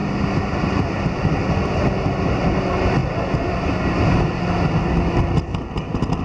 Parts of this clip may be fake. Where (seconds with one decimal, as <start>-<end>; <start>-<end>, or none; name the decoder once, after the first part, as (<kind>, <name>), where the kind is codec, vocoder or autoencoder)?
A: none